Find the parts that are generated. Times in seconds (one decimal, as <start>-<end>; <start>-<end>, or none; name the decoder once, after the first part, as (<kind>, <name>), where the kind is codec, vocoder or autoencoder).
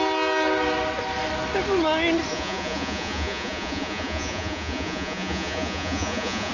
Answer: 2.3-6.5 (vocoder, Vocos)